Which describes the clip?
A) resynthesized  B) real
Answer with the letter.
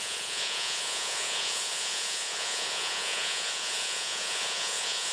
A